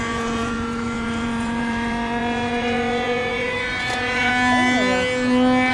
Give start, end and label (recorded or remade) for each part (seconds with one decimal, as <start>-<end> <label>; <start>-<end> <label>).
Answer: 0.0-4.3 remade; 4.3-5.7 recorded